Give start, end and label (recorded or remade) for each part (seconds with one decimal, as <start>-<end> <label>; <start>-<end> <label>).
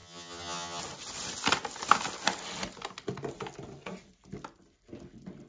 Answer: 0.0-0.8 remade; 0.8-5.5 recorded